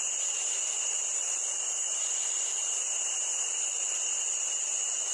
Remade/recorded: remade